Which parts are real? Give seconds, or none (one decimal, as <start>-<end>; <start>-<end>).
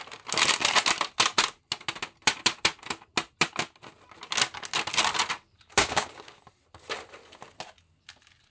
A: 0.0-5.8; 6.4-8.5